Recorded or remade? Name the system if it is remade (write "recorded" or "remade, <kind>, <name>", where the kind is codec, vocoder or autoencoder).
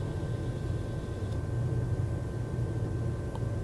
recorded